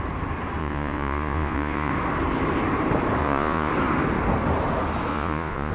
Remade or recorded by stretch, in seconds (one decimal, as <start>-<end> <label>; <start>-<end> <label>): 0.0-0.6 recorded; 0.6-1.9 remade; 1.9-3.2 recorded; 3.2-3.7 remade; 3.7-5.1 recorded; 5.1-5.7 remade